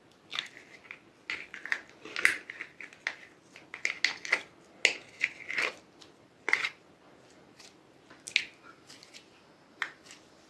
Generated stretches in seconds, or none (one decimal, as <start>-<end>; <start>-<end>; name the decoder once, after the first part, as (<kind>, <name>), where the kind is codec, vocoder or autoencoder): none